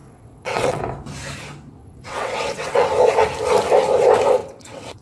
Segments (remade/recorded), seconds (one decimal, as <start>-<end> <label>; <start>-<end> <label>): 0.0-0.8 remade; 0.8-1.8 recorded; 1.8-2.9 remade; 2.9-4.4 recorded; 4.4-5.0 remade